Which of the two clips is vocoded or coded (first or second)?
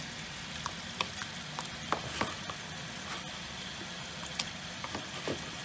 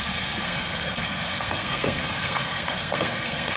second